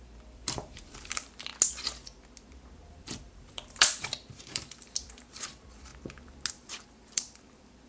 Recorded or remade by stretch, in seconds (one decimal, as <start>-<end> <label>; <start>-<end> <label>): 0.0-1.5 remade; 1.5-2.9 recorded; 2.9-5.9 remade; 5.9-6.5 recorded; 6.5-7.9 remade